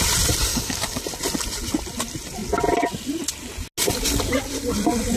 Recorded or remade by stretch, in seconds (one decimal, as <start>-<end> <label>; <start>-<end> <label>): 0.0-0.5 recorded; 0.5-1.0 remade; 1.0-5.2 recorded